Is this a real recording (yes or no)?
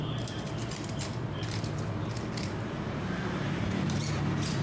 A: no